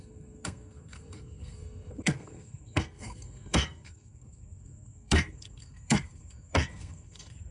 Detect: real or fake fake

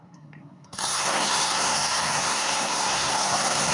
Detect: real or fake fake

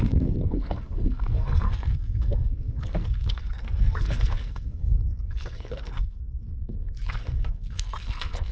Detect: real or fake fake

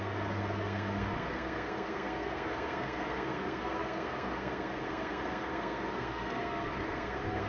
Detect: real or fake fake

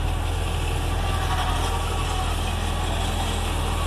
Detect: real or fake real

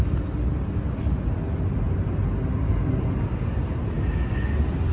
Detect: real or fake real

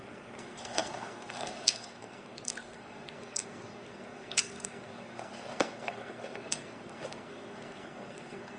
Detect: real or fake fake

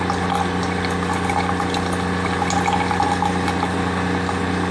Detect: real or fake real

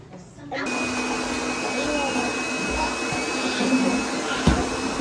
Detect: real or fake real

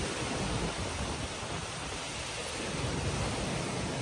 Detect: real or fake real